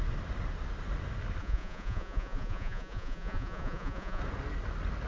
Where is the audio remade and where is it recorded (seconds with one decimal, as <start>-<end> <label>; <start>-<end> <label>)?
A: 0.0-1.4 recorded; 1.4-4.2 remade; 4.2-5.1 recorded

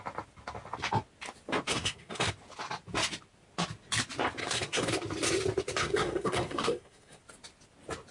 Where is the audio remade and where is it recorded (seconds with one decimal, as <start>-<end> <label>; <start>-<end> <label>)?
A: 0.0-1.7 recorded; 1.7-2.3 remade; 2.3-4.4 recorded; 4.4-4.9 remade; 4.9-5.8 recorded; 5.8-7.2 remade; 7.2-8.1 recorded